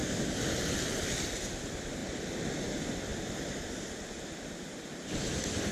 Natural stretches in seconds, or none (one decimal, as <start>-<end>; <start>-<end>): 0.0-5.7